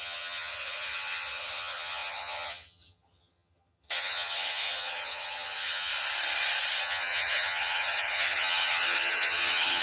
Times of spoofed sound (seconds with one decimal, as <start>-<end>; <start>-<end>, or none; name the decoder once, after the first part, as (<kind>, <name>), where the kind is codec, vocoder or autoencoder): 0.0-5.9 (vocoder, HiFi-GAN); 6.8-9.8